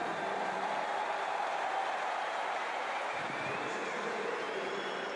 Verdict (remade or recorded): remade